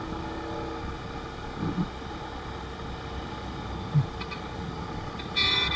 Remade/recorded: recorded